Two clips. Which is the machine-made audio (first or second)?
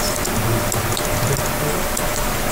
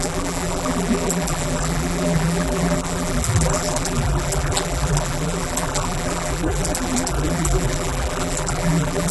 second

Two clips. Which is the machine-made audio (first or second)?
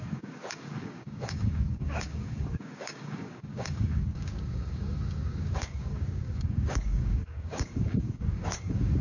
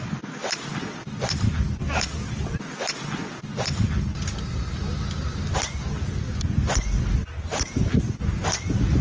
first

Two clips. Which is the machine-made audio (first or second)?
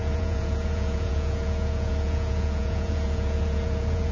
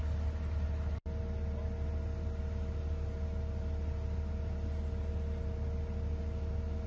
first